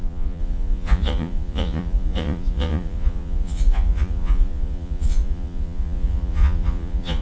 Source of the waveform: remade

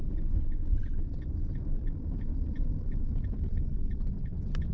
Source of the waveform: recorded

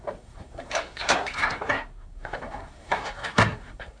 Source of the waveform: remade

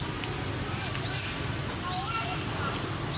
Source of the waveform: recorded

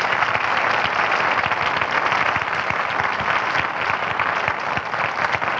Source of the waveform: recorded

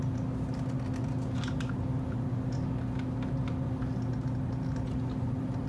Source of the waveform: recorded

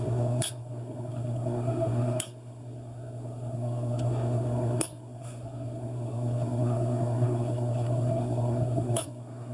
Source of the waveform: remade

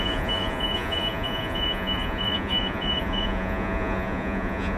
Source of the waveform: remade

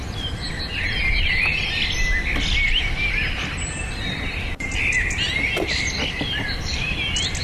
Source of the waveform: recorded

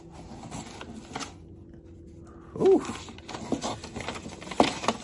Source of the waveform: recorded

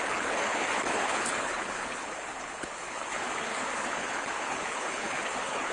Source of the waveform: remade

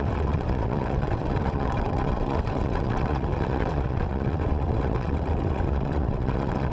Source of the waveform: remade